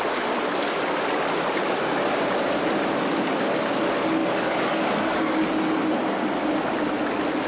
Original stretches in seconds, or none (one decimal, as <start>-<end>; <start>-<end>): 0.0-4.2; 5.9-7.5